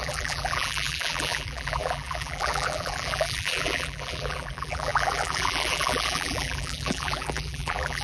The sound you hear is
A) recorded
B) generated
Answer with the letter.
B